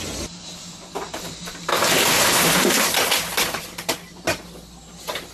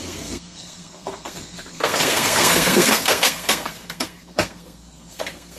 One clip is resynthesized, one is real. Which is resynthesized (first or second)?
second